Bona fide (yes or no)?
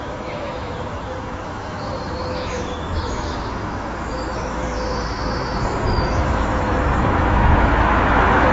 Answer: no